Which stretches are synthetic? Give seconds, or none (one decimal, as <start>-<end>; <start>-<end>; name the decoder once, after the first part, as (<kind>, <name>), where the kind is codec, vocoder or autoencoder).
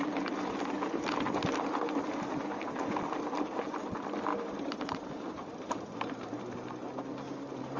0.0-0.6 (vocoder, BigVGAN v2); 4.3-6.4